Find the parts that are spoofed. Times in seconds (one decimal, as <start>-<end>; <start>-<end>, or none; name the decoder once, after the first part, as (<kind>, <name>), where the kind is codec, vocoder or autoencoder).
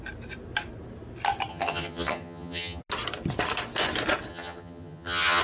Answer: 1.5-2.8 (vocoder, HiFi-GAN); 4.3-5.4